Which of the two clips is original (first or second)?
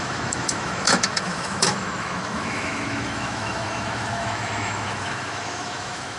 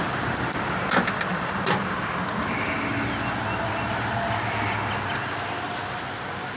second